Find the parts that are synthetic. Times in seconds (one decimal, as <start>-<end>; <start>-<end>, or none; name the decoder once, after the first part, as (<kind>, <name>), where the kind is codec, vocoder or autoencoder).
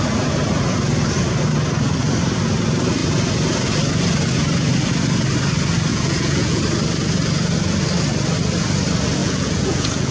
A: 5.9-6.6 (vocoder, Vocos); 9.2-10.1